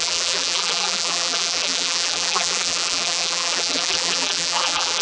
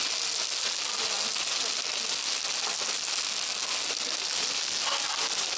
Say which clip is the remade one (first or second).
first